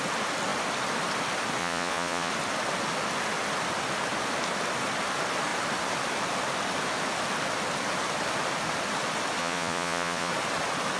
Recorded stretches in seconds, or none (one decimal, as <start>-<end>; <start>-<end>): 0.0-1.6; 2.3-9.4; 10.3-11.0